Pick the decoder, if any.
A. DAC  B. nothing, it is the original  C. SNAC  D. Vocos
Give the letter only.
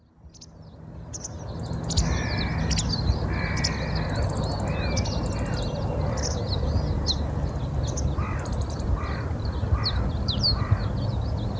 B